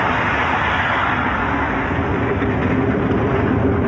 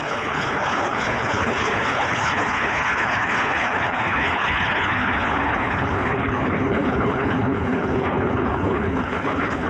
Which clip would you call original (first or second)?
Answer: first